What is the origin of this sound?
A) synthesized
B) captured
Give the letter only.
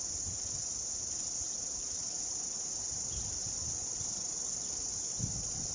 A